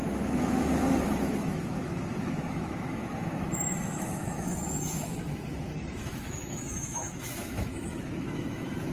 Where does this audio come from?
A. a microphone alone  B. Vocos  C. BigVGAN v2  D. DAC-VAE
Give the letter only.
D